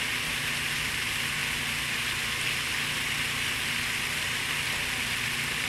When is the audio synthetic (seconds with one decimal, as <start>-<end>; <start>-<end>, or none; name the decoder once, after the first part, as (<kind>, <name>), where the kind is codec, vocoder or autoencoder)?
0.0-1.4 (vocoder, BigVGAN v2); 4.2-5.7